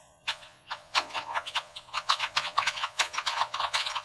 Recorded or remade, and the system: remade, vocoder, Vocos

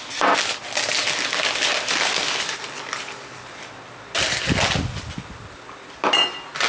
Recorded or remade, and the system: recorded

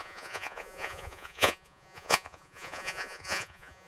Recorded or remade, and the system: remade, vocoder, Vocos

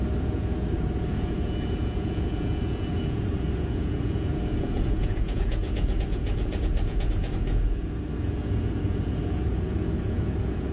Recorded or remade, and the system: remade, vocoder, Vocos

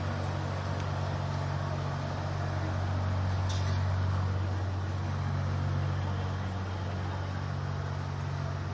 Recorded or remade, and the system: recorded